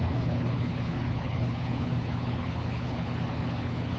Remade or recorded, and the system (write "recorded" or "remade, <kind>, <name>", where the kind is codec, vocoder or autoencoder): remade, codec, HILCodec